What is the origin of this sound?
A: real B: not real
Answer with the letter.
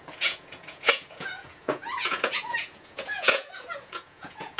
B